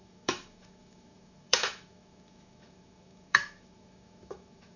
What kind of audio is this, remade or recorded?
remade